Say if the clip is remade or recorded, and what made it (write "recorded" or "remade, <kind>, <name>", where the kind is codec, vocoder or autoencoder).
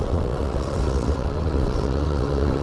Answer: remade, vocoder, WaveNeXt